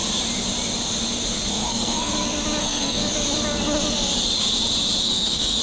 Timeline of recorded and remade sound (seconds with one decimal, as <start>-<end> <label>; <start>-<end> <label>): 0.0-1.5 recorded; 1.5-2.1 remade; 2.1-2.6 recorded; 2.6-3.0 remade; 3.0-5.0 recorded; 5.0-5.6 remade